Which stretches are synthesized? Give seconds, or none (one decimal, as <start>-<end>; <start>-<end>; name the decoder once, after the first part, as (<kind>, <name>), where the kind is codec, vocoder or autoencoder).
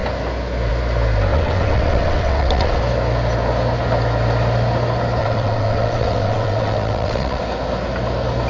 1.3-2.8 (vocoder, WaveNeXt); 5.2-7.4